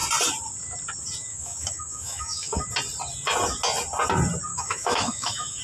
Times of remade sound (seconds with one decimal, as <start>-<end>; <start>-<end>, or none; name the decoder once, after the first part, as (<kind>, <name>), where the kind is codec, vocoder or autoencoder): 1.3-2.6 (autoencoder, DAC-VAE); 4.5-5.6